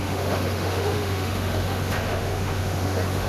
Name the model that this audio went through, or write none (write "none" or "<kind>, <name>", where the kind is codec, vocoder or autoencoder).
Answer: autoencoder, DAC-VAE